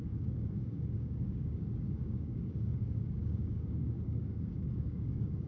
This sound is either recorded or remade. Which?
remade